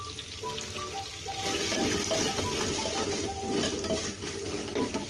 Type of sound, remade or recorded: recorded